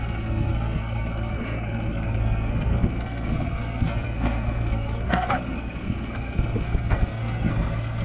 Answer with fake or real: fake